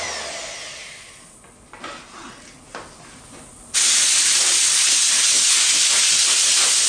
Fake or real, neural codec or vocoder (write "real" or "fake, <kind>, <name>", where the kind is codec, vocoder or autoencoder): real